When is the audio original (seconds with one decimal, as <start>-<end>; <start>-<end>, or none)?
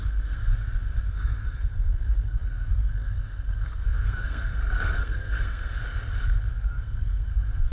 0.5-1.0; 5.8-6.5